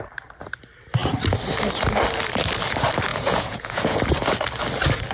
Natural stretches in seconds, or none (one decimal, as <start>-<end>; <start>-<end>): 0.0-3.1; 4.0-5.1